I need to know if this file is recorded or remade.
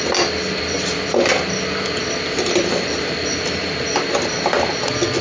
recorded